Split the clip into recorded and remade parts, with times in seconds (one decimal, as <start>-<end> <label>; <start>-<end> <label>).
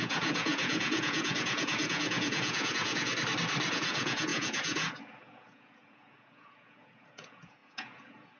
0.0-3.1 remade; 3.1-3.7 recorded; 3.7-8.4 remade